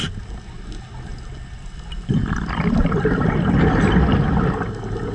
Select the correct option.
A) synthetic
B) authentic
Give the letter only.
B